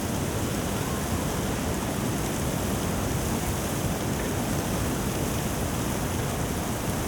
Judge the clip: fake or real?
real